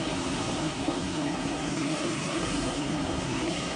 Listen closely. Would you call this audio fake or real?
fake